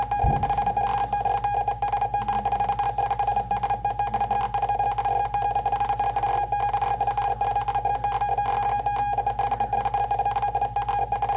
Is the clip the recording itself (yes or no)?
yes